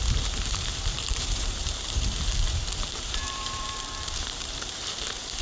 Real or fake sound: fake